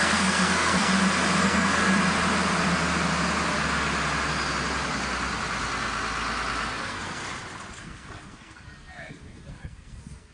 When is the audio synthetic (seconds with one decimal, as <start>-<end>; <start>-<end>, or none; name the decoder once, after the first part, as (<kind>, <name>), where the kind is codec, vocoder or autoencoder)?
0.0-0.9 (codec, SNAC); 1.4-1.8; 6.8-7.2; 7.7-10.3